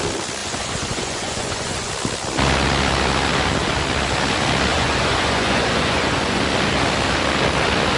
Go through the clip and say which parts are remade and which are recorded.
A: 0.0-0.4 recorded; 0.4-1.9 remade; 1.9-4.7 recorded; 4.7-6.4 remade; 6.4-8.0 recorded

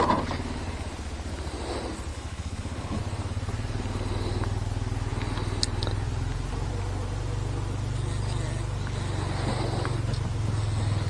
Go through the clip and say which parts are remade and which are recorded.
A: 0.0-2.1 recorded; 2.1-3.0 remade; 3.0-11.1 recorded

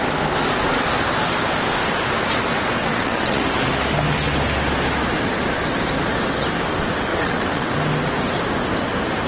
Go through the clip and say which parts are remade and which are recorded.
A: 0.0-2.8 recorded; 2.8-3.4 remade; 3.4-7.1 recorded; 7.1-7.7 remade; 7.7-9.3 recorded

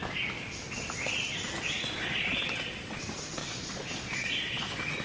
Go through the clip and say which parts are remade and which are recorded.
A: 0.0-2.0 recorded; 2.0-3.0 remade; 3.0-3.4 recorded; 3.4-5.0 remade